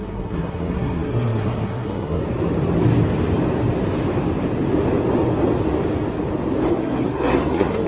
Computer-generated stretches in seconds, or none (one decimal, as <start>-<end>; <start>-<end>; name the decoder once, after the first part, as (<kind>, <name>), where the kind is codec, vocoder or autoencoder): 0.0-2.2 (codec, SNAC); 6.7-7.9